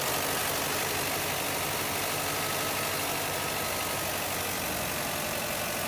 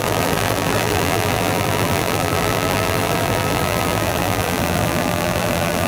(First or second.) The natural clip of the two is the first